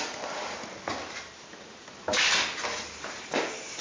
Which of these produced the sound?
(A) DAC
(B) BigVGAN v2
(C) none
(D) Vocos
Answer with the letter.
C